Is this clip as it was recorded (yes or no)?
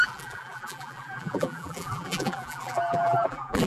no